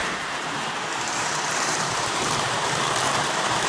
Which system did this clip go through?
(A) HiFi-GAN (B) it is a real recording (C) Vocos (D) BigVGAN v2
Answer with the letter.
D